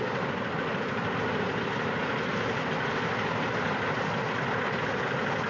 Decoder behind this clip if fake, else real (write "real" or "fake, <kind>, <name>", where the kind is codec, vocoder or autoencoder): real